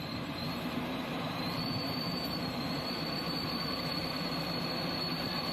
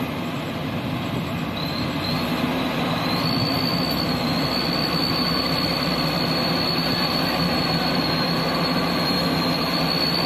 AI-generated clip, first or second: first